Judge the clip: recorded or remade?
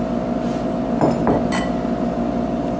recorded